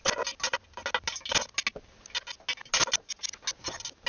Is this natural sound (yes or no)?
yes